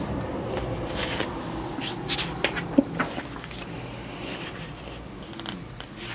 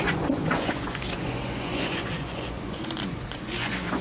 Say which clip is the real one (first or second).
first